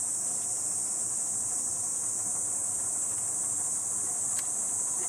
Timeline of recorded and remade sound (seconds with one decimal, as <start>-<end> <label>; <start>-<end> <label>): 0.0-5.1 recorded